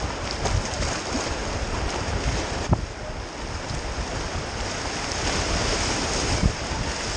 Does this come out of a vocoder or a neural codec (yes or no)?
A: no